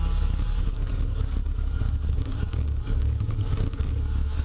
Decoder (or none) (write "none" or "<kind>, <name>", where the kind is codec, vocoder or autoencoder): codec, DAC